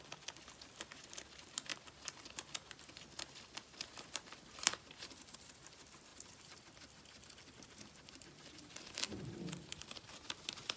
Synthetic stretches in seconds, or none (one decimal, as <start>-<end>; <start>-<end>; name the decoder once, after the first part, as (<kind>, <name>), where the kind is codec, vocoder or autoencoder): 1.7-5.2 (vocoder, BigVGAN v2); 6.1-10.1